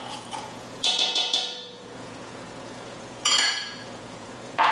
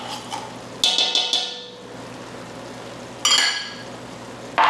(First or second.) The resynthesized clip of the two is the first